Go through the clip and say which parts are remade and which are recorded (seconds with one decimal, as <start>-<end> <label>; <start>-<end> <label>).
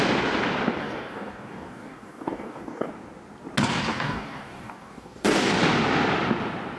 0.0-0.8 recorded; 0.8-2.9 remade; 2.9-3.9 recorded; 3.9-5.5 remade; 5.5-6.8 recorded